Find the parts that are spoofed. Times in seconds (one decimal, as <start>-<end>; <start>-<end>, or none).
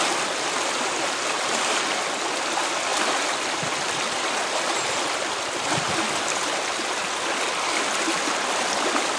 none